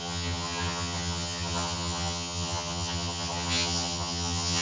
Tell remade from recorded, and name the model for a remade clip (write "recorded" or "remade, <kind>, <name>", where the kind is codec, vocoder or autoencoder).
remade, vocoder, HiFi-GAN